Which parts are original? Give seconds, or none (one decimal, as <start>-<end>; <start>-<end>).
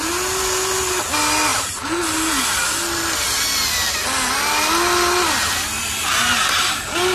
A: 0.0-7.1